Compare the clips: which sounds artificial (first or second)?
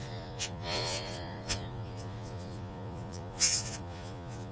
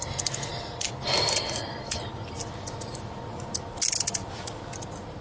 first